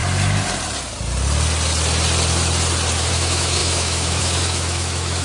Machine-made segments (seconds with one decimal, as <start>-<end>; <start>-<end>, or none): 3.1-5.2